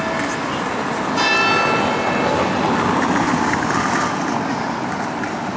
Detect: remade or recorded recorded